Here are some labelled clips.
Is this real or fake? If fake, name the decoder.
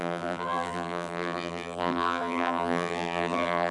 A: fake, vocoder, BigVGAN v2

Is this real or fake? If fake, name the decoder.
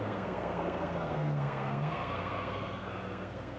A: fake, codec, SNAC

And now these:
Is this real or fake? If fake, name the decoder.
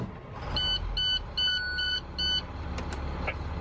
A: real